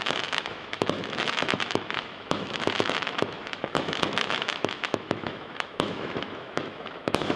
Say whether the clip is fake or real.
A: fake